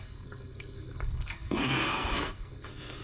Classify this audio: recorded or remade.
remade